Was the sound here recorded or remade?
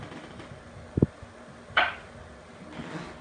recorded